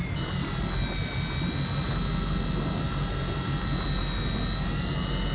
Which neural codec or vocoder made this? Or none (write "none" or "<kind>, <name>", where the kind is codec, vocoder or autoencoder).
none